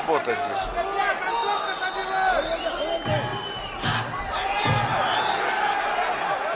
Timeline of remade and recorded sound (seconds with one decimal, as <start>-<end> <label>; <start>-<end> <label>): 0.0-6.5 recorded

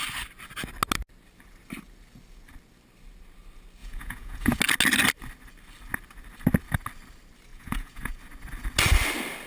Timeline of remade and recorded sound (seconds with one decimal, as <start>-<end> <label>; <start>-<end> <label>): 0.0-3.8 recorded; 3.8-4.6 remade; 4.6-7.5 recorded; 7.5-8.2 remade; 8.2-9.5 recorded